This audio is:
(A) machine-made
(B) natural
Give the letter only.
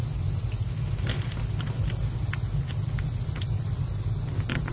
B